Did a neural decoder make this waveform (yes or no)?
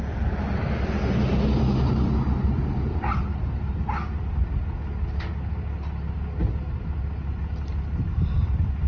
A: no